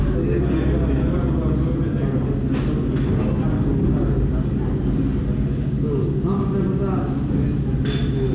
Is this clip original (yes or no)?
yes